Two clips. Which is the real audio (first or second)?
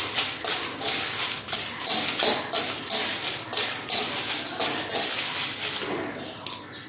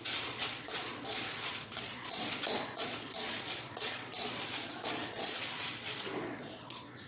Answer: first